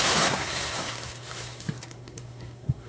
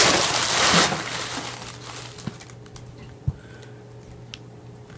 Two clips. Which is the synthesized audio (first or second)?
first